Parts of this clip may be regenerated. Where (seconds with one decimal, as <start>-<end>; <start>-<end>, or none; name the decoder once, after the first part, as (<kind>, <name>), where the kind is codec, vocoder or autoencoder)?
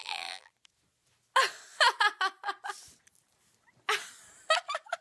0.0-0.5 (vocoder, BigVGAN v2)